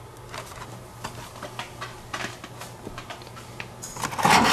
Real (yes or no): yes